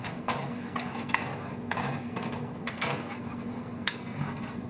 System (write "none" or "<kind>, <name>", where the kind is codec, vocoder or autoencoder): codec, SNAC